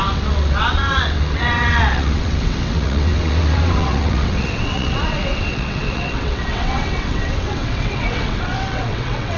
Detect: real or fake fake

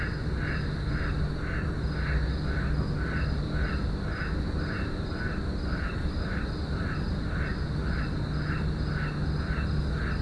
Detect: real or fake real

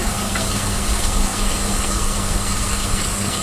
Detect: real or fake fake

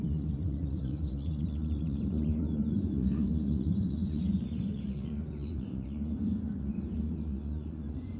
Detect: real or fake fake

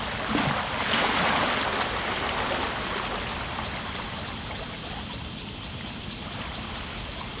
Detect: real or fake real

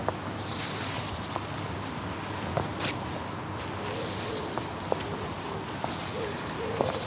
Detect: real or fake real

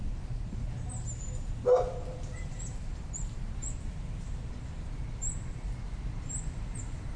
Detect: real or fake real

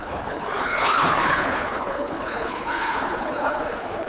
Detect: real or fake fake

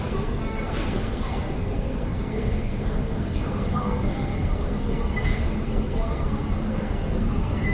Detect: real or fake fake